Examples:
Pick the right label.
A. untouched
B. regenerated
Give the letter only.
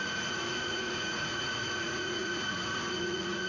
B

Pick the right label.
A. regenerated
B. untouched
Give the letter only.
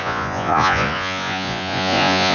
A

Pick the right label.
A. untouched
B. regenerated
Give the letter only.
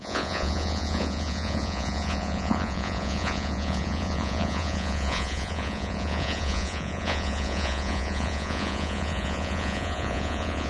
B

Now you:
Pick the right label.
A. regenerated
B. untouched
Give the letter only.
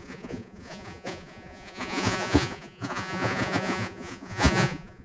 A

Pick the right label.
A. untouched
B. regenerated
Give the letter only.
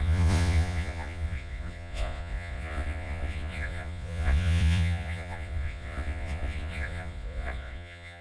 B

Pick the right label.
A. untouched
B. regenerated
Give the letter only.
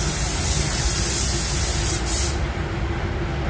A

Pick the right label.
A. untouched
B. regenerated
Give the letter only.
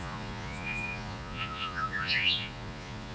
B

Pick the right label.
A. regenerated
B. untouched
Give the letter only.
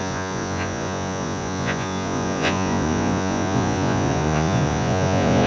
A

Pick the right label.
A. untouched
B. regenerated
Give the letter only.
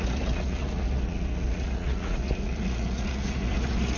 B